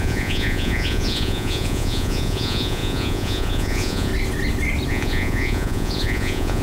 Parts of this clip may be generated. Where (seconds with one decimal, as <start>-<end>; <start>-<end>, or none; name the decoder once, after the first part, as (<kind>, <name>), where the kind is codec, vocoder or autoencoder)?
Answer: 0.0-4.1 (vocoder, Vocos); 4.9-6.6